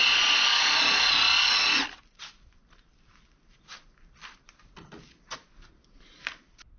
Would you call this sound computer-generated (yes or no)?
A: no